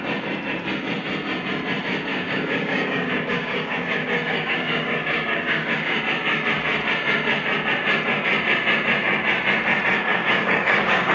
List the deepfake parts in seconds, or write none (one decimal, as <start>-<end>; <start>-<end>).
2.1-6.0; 10.1-11.1